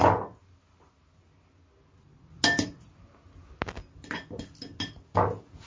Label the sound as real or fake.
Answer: real